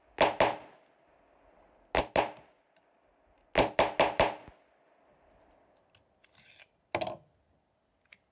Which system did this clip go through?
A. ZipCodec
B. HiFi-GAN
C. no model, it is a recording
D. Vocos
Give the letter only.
C